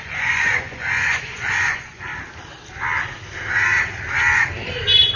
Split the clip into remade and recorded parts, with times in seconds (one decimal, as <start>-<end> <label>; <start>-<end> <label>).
0.0-2.1 remade; 2.1-5.2 recorded